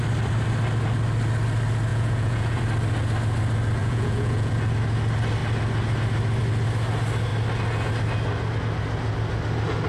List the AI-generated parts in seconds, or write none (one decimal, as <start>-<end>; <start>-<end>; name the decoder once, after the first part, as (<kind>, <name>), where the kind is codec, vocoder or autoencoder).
1.9-2.6 (vocoder, Vocos); 3.8-4.5